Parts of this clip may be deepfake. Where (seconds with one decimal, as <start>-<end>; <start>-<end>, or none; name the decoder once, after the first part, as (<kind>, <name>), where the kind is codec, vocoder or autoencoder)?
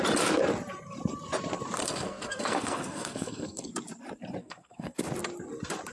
1.8-3.7 (codec, SNAC); 4.4-5.0